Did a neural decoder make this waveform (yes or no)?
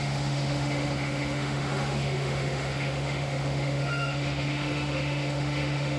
yes